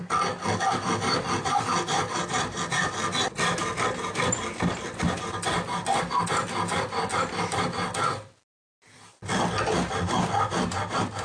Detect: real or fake real